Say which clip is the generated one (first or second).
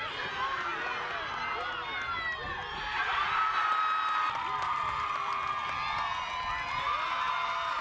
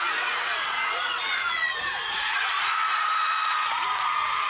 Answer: second